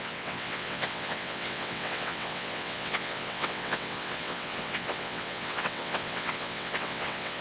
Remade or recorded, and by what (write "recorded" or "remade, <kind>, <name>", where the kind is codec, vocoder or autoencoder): remade, vocoder, WaveNeXt